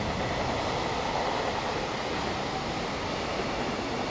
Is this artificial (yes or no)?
no